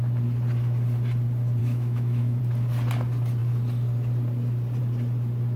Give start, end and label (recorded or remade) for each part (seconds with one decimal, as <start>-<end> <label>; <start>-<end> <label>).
0.0-1.6 recorded; 1.6-2.4 remade; 2.4-5.6 recorded